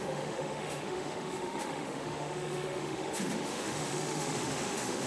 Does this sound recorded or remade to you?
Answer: remade